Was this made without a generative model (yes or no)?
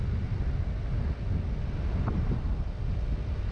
yes